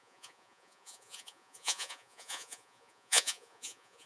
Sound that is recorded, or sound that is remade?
remade